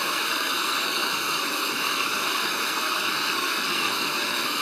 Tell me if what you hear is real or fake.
fake